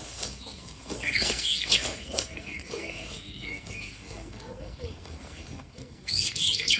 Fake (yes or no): yes